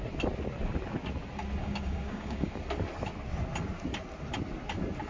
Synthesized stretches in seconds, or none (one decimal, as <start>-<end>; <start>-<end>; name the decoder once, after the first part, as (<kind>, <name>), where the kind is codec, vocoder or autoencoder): 1.6-2.5 (codec, DAC)